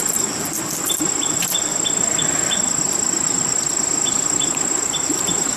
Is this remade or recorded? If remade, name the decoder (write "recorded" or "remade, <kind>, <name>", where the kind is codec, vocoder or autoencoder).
recorded